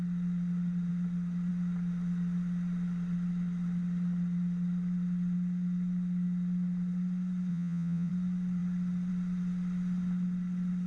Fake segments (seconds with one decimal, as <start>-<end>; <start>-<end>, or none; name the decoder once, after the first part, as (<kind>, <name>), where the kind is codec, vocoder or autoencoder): 7.5-8.1 (vocoder, Vocos)